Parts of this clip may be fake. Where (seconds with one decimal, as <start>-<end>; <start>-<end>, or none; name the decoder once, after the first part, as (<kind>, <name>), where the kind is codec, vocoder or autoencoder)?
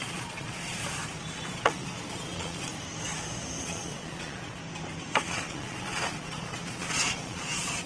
0.0-0.8 (vocoder, Vocos); 1.5-2.7; 3.6-4.6; 5.2-7.9